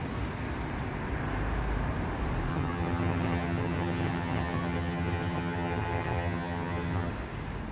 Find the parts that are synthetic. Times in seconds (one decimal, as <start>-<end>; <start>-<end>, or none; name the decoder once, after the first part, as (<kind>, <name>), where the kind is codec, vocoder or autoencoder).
2.5-7.1 (vocoder, HiFi-GAN)